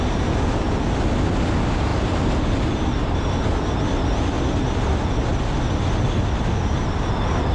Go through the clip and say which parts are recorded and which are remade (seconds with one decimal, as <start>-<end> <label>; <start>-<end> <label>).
0.0-7.5 recorded